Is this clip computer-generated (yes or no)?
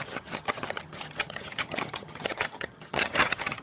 yes